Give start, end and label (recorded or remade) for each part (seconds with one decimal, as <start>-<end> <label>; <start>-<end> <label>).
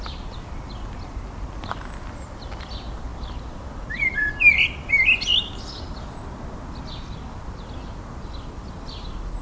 0.0-9.4 recorded